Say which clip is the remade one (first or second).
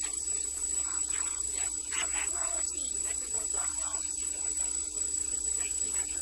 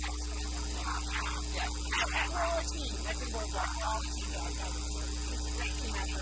first